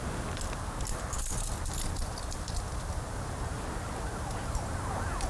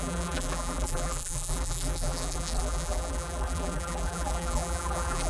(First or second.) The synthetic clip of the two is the second